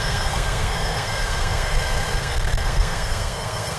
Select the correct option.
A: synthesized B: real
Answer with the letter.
A